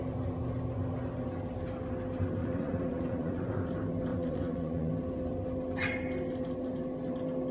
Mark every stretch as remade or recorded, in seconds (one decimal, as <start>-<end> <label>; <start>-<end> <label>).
0.0-2.4 recorded; 2.4-3.6 remade; 3.6-4.1 recorded; 4.1-4.9 remade; 4.9-7.5 recorded

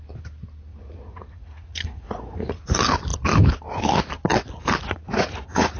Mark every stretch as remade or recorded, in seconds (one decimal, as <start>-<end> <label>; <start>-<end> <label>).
0.0-0.7 recorded; 0.7-2.6 remade; 2.6-4.8 recorded; 4.8-5.8 remade